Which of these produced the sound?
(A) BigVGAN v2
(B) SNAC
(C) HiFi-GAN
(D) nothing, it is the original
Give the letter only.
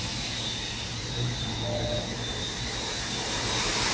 D